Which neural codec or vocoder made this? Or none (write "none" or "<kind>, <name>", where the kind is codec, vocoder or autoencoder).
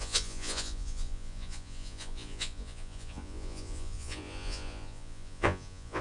vocoder, Vocos